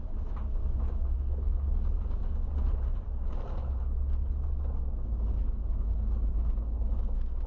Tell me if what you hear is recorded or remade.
recorded